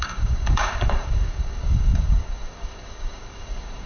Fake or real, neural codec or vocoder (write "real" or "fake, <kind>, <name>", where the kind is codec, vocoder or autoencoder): fake, codec, DAC